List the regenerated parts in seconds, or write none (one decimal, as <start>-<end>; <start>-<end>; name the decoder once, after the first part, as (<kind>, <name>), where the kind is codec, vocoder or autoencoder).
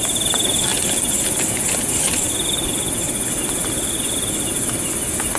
none